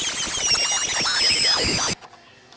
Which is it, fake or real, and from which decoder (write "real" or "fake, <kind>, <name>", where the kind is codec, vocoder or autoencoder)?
real